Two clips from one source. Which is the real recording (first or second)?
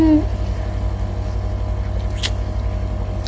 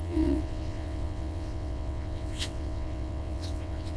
first